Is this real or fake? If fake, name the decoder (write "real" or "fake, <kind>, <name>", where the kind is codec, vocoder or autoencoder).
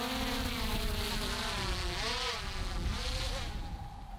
real